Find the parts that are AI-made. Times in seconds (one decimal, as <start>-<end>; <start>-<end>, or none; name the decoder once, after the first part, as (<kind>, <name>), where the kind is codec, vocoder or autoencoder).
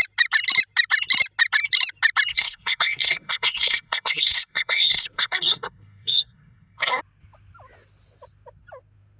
2.3-7.0 (codec, SNAC)